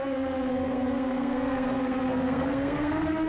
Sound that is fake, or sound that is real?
fake